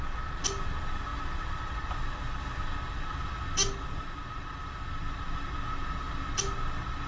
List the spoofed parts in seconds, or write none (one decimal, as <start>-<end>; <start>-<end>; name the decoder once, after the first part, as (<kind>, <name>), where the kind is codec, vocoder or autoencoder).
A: none